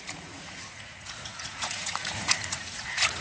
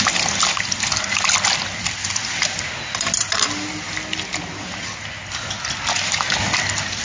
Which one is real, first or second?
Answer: second